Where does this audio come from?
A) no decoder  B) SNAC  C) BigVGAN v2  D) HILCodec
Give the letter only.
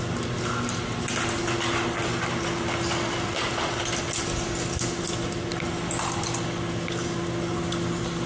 A